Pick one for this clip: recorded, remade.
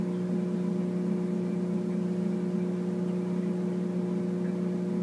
recorded